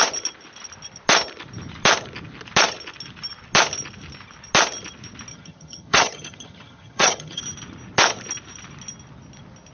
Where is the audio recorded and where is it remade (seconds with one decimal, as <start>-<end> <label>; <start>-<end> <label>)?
0.0-5.3 recorded; 5.3-7.4 remade; 7.4-9.7 recorded